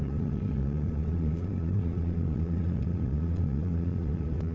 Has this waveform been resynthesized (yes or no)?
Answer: yes